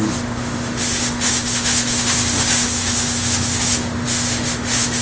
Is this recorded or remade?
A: remade